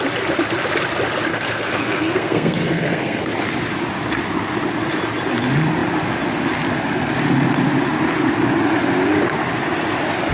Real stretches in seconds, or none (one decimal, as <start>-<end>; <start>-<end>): 0.0-1.3; 3.3-10.3